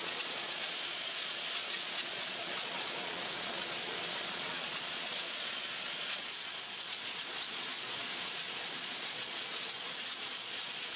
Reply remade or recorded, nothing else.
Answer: remade